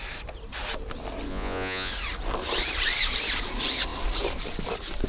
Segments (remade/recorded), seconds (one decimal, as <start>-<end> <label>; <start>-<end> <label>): 0.0-1.3 recorded; 1.3-1.9 remade; 1.9-5.1 recorded